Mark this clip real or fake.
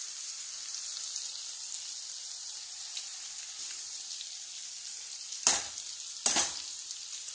real